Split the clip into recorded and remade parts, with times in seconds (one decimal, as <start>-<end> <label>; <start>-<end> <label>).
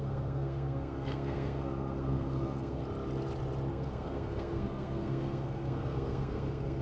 0.0-2.8 remade; 2.8-3.7 recorded; 3.7-6.8 remade